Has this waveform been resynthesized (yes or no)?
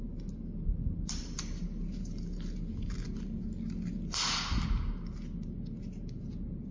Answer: no